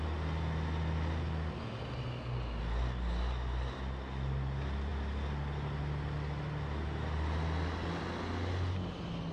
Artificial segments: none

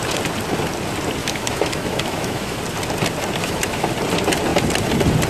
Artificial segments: 1.2-2.6; 3.4-3.9